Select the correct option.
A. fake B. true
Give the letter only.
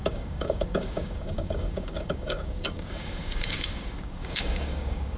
A